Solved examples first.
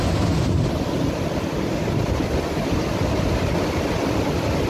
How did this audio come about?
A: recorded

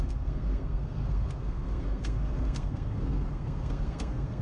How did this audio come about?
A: remade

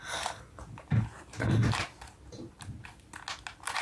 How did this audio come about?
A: recorded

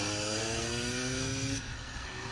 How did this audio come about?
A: remade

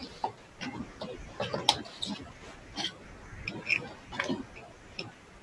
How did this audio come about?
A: recorded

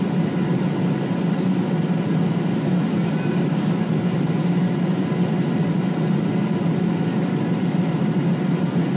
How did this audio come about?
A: recorded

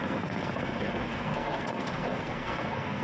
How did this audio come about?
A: remade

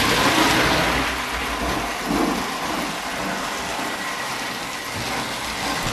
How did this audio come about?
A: recorded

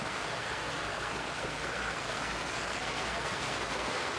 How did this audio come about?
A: remade